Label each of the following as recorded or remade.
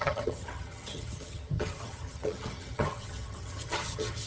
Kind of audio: remade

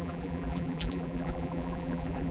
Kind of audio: remade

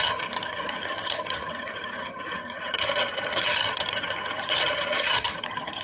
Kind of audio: remade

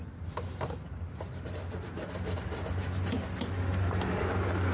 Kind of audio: recorded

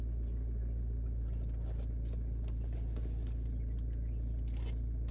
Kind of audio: recorded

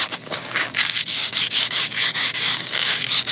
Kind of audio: remade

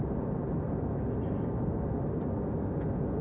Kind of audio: recorded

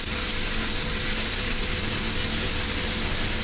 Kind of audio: recorded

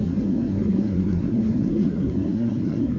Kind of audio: remade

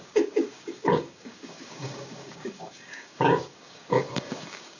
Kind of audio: remade